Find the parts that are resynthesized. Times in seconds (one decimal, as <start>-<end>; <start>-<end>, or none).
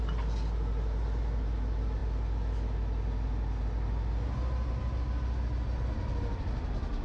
none